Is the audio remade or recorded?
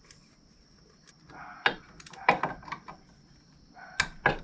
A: recorded